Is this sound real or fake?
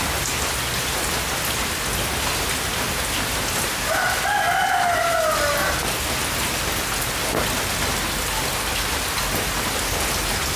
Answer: real